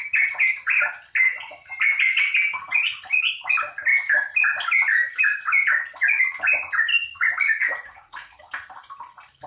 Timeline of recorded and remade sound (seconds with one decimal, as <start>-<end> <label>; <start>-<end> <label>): 0.0-6.9 recorded; 6.9-8.4 remade; 8.4-9.5 recorded